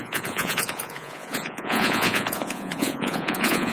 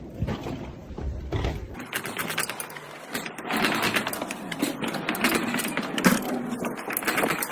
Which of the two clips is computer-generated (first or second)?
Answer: first